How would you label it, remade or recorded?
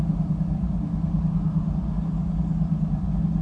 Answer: recorded